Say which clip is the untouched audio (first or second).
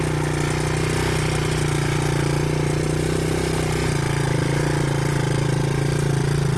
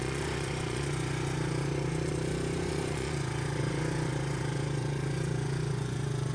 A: first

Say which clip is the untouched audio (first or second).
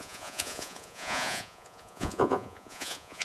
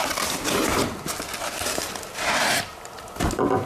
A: second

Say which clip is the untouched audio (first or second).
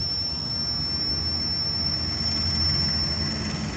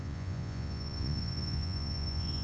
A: first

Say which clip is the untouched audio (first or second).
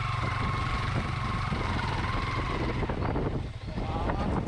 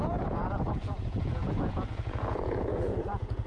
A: first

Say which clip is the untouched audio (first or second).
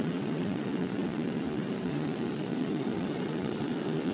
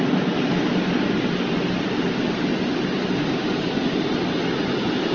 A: second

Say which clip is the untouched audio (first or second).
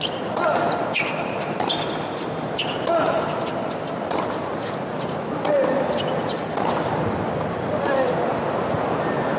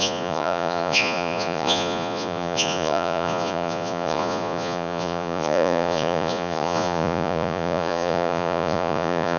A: first